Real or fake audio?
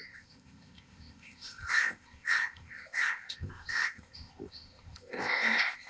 fake